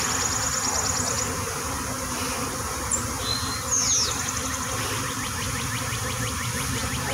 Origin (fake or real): real